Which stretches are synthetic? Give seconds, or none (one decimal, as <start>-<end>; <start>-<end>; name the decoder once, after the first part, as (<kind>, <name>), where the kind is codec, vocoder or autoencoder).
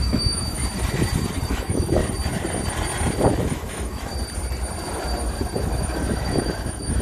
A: 0.0-0.6 (autoencoder, DAC-VAE); 1.5-2.0; 3.4-4.1; 5.6-7.0